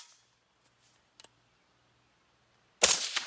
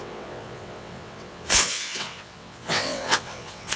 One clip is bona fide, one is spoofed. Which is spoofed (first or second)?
second